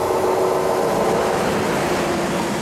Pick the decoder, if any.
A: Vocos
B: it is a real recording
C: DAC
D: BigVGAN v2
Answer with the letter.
B